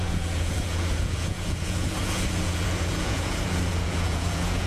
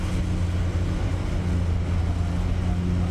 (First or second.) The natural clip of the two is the second